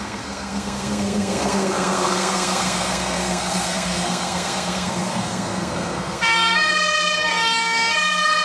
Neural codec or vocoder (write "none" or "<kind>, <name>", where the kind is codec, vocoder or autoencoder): codec, SNAC